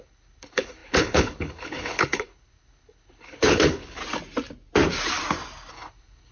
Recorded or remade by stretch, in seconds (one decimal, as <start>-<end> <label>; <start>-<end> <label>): 0.0-4.0 remade; 4.0-5.7 recorded; 5.7-6.3 remade